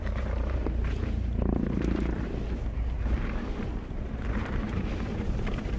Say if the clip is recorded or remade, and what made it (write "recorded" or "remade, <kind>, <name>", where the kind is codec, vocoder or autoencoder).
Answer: remade, vocoder, BigVGAN v2